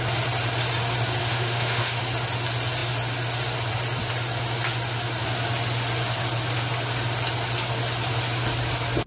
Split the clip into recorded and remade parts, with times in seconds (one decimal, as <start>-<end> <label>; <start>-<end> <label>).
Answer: 0.0-1.2 recorded; 1.2-2.0 remade; 2.0-9.1 recorded